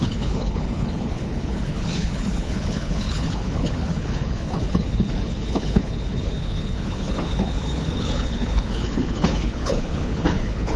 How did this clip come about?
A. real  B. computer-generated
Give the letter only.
B